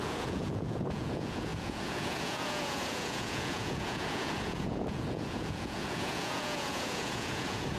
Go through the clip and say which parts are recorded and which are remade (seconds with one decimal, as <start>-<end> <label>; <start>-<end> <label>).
0.0-7.8 remade